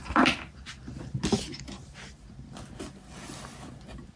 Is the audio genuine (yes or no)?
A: yes